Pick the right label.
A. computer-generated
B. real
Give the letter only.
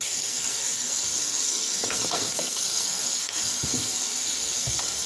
A